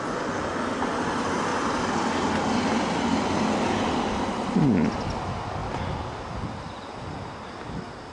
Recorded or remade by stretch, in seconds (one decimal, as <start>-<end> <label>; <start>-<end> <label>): 0.0-1.5 recorded; 1.5-2.1 remade; 2.1-8.1 recorded